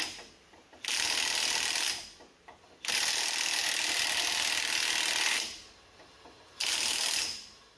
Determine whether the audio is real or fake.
real